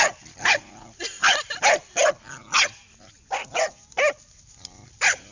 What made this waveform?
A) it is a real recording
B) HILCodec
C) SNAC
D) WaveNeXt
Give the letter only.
A